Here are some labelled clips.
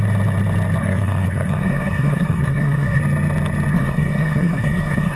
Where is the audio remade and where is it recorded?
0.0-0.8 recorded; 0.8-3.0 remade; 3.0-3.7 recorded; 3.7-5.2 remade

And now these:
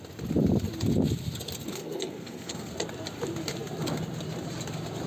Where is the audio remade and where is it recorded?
0.0-1.7 recorded; 1.7-2.7 remade; 2.7-5.1 recorded